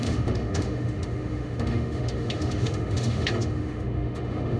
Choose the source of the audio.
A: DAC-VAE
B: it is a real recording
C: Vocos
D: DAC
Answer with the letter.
A